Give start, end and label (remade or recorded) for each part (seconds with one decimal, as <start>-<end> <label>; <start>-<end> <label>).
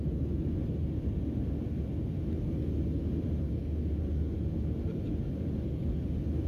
0.0-3.6 remade; 3.6-5.3 recorded; 5.3-6.5 remade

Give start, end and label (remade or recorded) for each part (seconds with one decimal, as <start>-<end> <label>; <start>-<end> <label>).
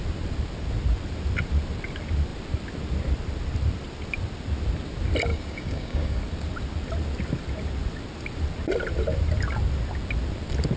0.0-5.3 recorded; 5.3-6.2 remade; 6.2-10.8 recorded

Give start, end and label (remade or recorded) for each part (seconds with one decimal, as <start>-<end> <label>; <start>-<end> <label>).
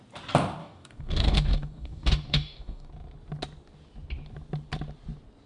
0.0-0.6 recorded; 0.6-2.9 remade; 2.9-5.5 recorded